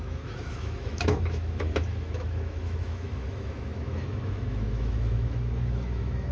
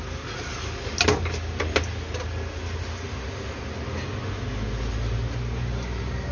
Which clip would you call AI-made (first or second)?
first